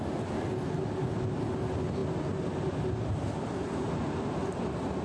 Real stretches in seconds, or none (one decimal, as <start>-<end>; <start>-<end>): 0.0-5.0